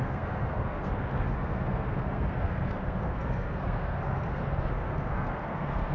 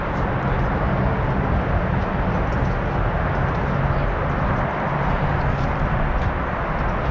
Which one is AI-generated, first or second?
first